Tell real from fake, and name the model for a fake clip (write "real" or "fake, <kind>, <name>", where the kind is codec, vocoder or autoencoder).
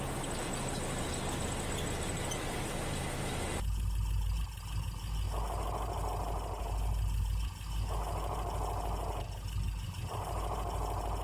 real